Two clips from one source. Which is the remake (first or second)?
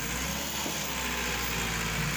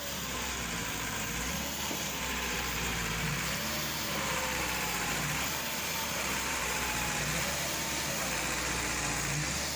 second